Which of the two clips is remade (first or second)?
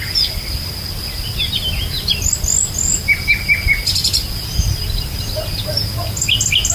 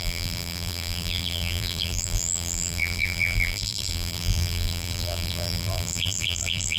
second